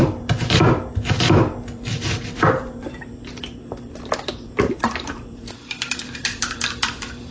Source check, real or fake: fake